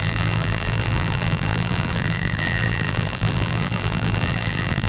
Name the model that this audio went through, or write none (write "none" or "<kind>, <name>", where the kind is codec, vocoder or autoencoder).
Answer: vocoder, BigVGAN v2